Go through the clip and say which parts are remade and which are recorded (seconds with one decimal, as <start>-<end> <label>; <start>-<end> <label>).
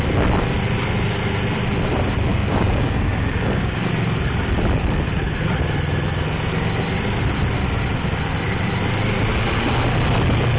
0.0-2.3 recorded; 2.3-3.9 remade; 3.9-10.6 recorded